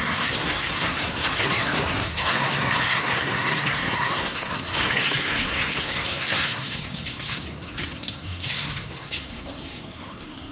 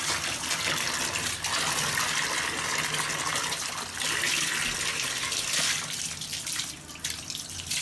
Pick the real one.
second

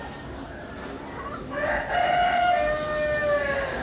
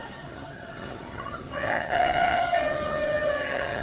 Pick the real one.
first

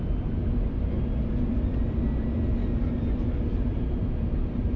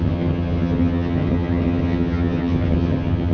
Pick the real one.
first